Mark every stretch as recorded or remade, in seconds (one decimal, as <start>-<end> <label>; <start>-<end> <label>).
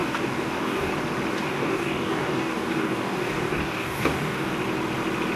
0.0-0.9 remade; 0.9-1.3 recorded; 1.3-4.5 remade; 4.5-5.4 recorded